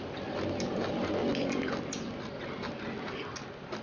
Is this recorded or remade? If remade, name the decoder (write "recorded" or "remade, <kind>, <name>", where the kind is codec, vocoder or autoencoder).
recorded